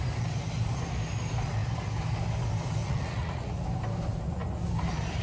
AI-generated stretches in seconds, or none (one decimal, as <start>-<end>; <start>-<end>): 2.8-3.6